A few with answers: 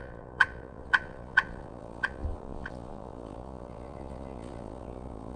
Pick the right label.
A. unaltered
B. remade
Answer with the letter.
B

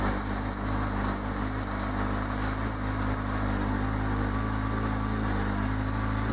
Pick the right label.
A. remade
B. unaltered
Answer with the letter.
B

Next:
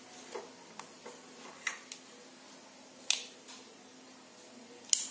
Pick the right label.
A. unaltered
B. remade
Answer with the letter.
A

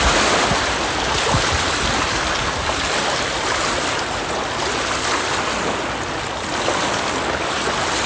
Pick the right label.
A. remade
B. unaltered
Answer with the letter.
B